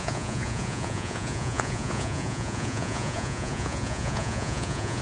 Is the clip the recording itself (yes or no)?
no